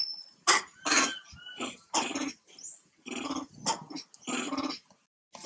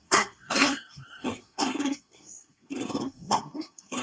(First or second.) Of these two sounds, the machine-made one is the second